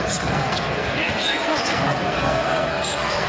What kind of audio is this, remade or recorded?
remade